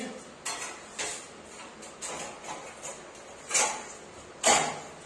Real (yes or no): yes